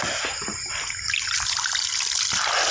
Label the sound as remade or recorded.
recorded